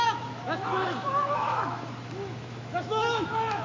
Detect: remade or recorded remade